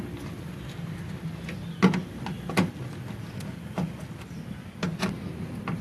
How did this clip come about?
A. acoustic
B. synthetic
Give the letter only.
A